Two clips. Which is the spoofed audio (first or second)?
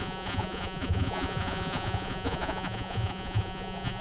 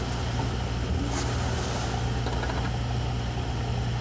first